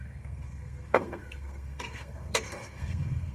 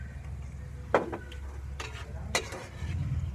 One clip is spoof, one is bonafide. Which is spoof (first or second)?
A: first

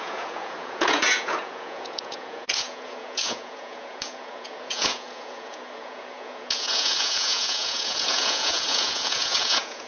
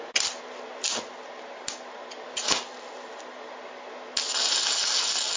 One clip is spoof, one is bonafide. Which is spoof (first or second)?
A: first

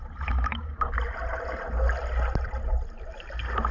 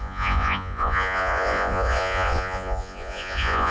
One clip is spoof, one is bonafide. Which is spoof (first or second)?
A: second